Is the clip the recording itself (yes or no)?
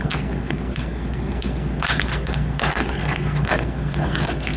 no